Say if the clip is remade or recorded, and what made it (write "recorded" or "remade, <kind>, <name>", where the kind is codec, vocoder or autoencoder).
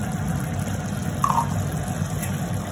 recorded